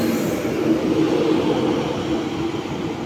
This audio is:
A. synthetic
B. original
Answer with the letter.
B